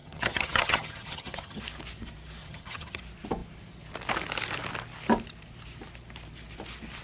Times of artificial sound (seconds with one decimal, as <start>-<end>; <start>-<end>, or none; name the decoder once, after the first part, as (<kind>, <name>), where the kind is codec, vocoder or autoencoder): 0.0-1.6 (vocoder, HiFi-GAN); 2.4-3.0